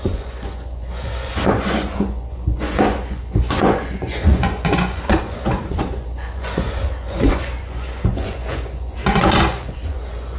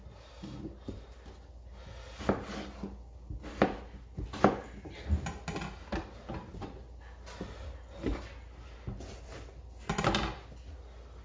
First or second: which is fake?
first